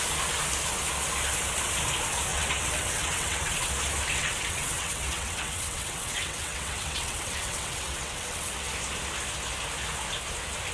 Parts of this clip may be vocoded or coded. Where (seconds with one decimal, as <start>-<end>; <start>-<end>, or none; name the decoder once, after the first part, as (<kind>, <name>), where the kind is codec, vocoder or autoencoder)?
2.3-3.7 (vocoder, WaveNeXt); 4.2-8.7

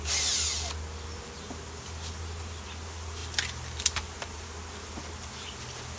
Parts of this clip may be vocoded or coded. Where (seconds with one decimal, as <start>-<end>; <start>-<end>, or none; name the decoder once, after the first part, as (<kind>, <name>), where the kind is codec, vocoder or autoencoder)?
none

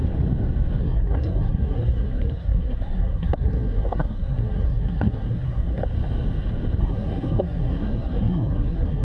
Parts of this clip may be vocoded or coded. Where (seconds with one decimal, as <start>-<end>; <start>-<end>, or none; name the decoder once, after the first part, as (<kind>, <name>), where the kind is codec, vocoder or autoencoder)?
0.8-5.8 (codec, SNAC); 6.8-9.0

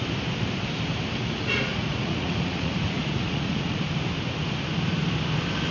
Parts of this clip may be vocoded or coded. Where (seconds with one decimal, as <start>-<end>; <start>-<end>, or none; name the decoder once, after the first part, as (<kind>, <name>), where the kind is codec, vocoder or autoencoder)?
1.2-3.8 (vocoder, Vocos)

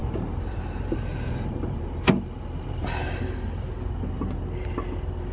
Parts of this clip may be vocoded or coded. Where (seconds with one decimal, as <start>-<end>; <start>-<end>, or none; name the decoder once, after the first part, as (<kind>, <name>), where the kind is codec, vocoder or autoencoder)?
0.0-3.2 (vocoder, BigVGAN v2)